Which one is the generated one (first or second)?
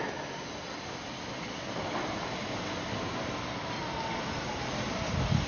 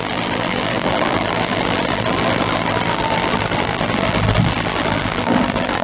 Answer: second